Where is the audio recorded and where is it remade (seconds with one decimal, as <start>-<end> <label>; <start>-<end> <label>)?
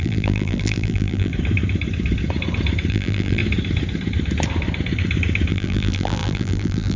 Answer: 0.0-1.3 remade; 1.3-2.9 recorded; 2.9-3.4 remade; 3.4-5.5 recorded; 5.5-7.0 remade